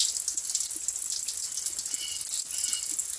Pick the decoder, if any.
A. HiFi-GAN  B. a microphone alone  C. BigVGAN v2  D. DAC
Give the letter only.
B